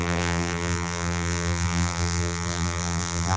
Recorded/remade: remade